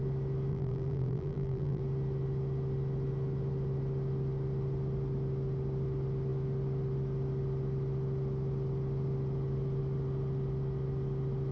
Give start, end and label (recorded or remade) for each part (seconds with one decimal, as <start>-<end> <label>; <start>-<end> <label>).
0.0-0.5 recorded; 0.5-1.8 remade; 1.8-11.5 recorded